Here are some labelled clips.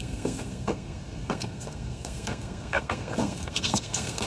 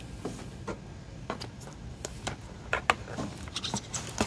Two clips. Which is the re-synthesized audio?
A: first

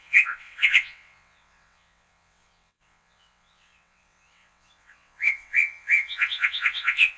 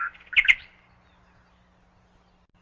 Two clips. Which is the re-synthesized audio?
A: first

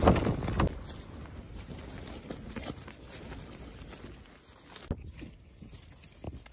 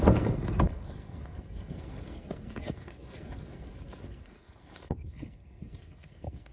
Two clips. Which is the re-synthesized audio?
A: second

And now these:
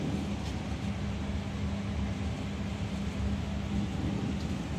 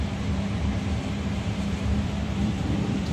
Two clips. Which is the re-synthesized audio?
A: second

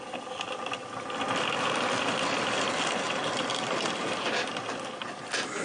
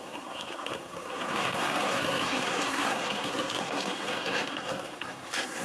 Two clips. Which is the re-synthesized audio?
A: second